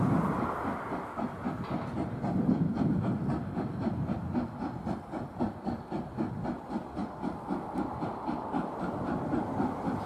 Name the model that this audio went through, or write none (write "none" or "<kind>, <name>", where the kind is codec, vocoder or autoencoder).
none